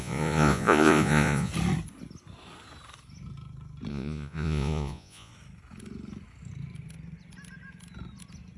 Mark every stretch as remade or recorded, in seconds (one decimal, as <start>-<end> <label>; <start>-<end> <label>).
0.0-1.5 remade; 1.5-3.9 recorded; 3.9-5.3 remade; 5.3-8.6 recorded